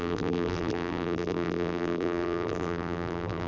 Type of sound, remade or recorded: remade